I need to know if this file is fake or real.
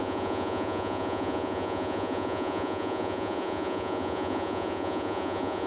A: fake